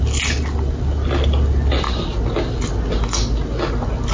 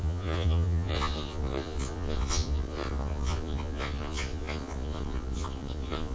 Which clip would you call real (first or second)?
first